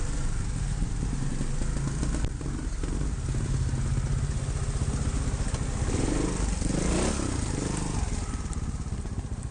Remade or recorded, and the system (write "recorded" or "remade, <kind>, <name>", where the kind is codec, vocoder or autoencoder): recorded